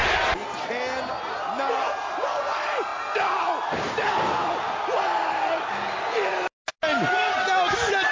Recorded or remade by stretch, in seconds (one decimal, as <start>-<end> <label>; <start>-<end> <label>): 0.0-8.1 recorded